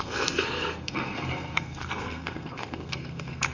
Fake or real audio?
fake